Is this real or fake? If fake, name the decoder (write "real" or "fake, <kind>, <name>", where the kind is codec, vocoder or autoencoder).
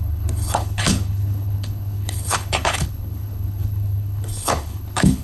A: fake, codec, HILCodec